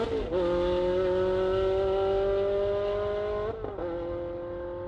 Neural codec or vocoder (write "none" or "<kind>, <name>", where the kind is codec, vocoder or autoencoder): none